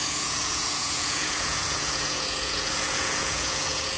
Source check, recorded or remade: remade